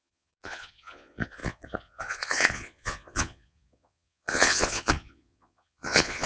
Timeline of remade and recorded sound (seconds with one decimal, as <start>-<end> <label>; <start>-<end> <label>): 0.0-6.3 remade